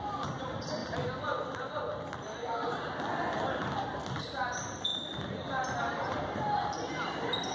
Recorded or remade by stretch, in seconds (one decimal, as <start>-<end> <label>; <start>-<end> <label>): 0.0-0.8 remade; 0.8-4.2 recorded; 4.2-4.9 remade; 4.9-5.8 recorded; 5.8-7.5 remade